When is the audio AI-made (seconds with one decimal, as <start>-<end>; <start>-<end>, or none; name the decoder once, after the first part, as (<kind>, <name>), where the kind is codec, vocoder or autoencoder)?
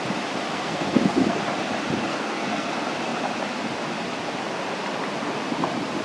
0.5-1.4 (codec, SNAC); 2.1-2.7